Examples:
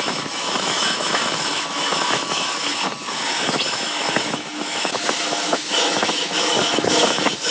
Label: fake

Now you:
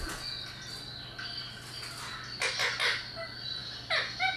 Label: real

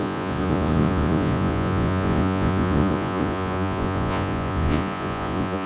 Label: fake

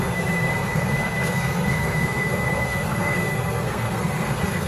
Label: fake